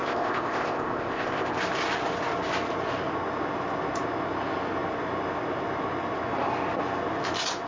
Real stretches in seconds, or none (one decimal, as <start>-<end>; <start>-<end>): 1.6-7.7